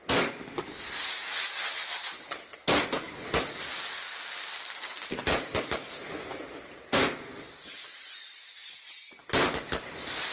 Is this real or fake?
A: real